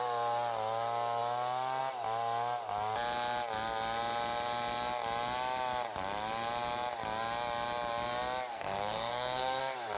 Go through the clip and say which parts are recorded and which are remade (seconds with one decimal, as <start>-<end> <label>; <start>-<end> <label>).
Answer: 0.0-8.5 recorded; 8.5-9.6 remade; 9.6-10.0 recorded